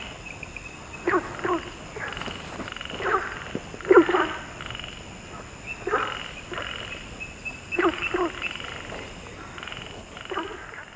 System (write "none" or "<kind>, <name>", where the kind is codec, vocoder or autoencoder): none